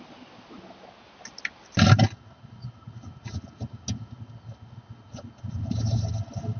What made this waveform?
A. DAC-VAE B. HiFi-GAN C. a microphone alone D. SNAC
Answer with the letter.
C